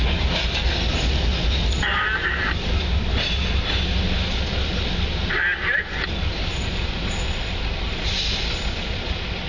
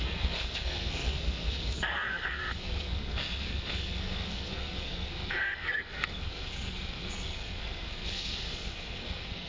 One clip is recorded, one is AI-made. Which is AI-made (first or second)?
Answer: second